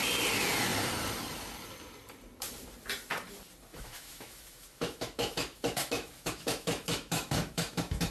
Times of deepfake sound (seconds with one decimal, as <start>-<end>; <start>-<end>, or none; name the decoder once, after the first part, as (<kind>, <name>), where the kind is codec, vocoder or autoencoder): 3.7-8.1 (autoencoder, DAC-VAE)